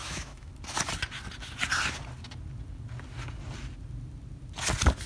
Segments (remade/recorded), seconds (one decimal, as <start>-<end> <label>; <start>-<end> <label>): 0.0-0.5 remade; 0.5-5.1 recorded